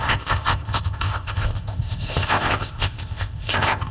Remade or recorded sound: remade